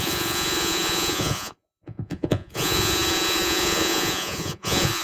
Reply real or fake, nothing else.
fake